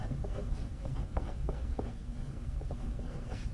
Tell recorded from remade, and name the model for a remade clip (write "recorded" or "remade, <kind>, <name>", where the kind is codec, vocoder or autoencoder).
remade, codec, SNAC